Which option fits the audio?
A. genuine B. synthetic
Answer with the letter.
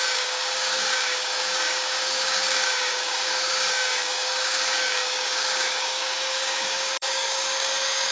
B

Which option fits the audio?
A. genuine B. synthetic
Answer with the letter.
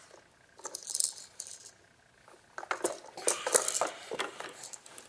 A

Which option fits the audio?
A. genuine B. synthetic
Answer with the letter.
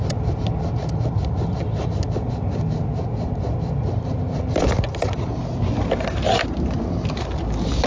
A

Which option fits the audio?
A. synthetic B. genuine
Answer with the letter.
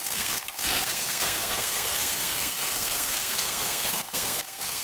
A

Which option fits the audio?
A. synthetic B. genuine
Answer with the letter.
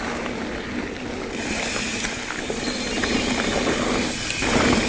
B